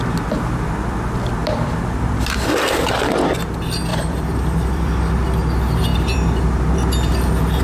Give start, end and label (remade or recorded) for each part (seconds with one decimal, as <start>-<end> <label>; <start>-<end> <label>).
0.0-1.4 recorded; 1.4-2.8 remade; 2.8-3.9 recorded; 3.9-5.0 remade; 5.0-5.9 recorded; 5.9-7.1 remade; 7.1-7.6 recorded